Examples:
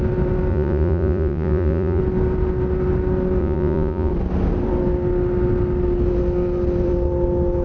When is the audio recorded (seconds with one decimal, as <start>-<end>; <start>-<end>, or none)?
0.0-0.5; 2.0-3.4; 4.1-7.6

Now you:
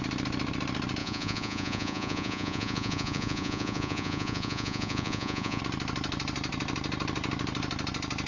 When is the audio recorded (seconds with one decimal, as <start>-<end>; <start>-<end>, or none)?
0.0-1.0; 5.6-8.3

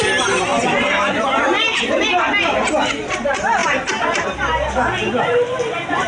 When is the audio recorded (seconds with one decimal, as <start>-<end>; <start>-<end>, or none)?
0.0-6.1

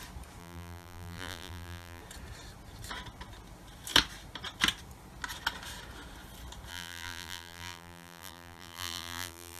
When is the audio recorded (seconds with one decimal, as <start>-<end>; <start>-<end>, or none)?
0.0-0.4; 2.0-6.7